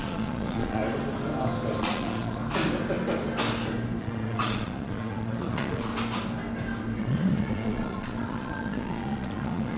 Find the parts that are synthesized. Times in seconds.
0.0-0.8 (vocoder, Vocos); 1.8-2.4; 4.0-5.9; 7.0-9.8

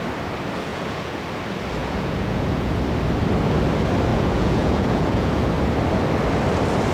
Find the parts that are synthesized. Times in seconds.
0.7-1.2 (vocoder, Vocos); 1.8-2.8; 4.1-5.5

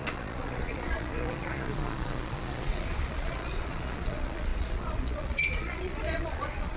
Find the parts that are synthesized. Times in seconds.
0.0-6.8 (vocoder, Vocos)

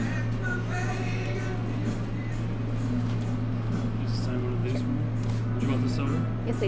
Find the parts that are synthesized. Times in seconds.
none

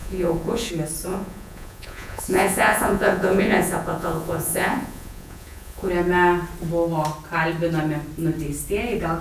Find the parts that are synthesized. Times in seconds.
0.0-0.7 (vocoder, Vocos); 1.1-5.9

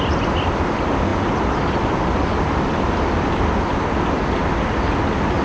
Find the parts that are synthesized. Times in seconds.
none

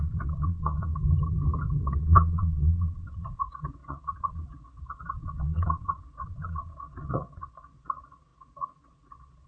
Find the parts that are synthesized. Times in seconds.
0.0-0.9 (vocoder, Vocos); 1.8-9.5

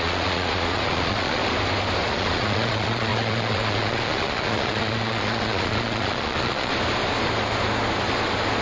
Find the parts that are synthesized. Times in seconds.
0.0-1.4 (vocoder, Vocos); 2.1-6.7